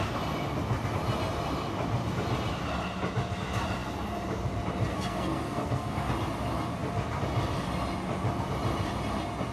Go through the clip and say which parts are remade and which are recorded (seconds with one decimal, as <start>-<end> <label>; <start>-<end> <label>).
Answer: 0.0-4.9 recorded; 4.9-6.1 remade; 6.1-9.5 recorded